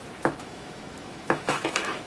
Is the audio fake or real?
fake